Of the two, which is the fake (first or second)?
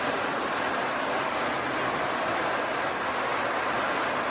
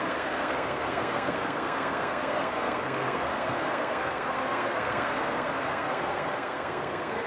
second